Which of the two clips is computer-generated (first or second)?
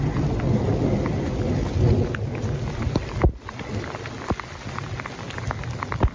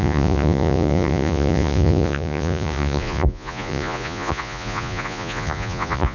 second